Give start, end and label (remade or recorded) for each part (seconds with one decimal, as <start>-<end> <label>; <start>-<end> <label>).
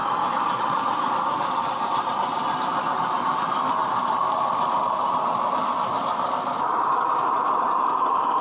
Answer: 0.0-8.4 recorded